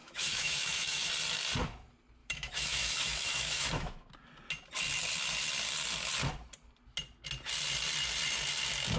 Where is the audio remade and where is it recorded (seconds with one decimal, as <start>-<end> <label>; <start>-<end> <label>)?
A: 0.0-1.1 remade; 1.1-2.2 recorded; 2.2-4.1 remade; 4.1-9.0 recorded